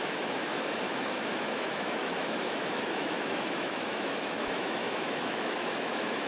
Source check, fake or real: fake